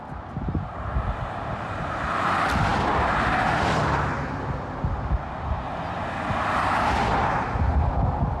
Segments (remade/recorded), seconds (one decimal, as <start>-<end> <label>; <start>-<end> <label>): 0.0-8.4 recorded

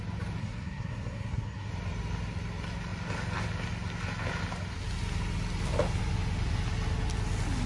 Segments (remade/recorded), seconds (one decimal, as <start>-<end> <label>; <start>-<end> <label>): 0.0-0.4 recorded; 0.4-1.7 remade; 1.7-7.7 recorded

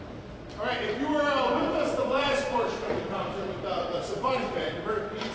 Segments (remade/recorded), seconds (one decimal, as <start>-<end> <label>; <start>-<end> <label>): 0.0-1.6 recorded; 1.6-4.8 remade; 4.8-5.3 recorded

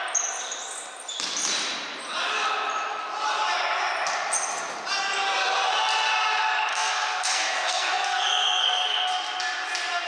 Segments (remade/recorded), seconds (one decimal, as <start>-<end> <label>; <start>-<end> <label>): 0.0-6.7 recorded; 6.7-9.1 remade; 9.1-10.1 recorded